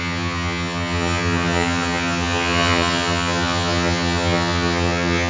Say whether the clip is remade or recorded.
remade